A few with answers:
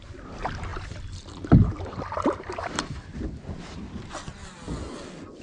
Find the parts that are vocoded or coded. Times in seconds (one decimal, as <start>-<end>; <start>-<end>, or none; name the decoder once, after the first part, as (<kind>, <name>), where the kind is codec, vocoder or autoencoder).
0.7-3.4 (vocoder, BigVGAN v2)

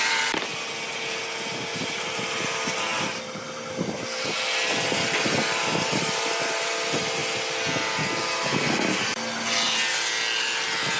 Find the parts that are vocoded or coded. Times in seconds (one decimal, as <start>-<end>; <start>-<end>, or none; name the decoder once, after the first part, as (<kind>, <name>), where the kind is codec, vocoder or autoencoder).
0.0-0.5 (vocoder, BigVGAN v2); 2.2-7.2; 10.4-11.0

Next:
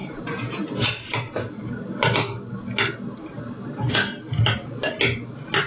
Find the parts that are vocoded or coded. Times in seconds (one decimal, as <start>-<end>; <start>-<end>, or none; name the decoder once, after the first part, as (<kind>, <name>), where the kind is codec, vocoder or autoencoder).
none

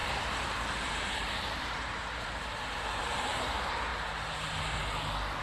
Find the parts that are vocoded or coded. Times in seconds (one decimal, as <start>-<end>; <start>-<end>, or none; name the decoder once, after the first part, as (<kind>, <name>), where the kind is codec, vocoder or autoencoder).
0.0-3.9 (vocoder, BigVGAN v2)